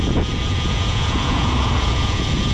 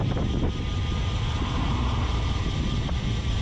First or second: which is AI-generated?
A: first